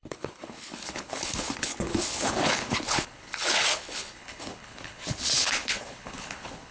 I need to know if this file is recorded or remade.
remade